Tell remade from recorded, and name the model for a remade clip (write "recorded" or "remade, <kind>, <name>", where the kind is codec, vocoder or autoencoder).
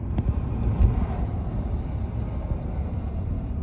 recorded